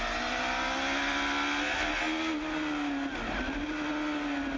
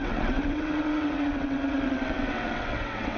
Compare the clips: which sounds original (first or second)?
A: first